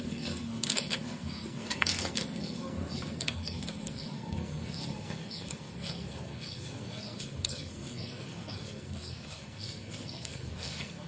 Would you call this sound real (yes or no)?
no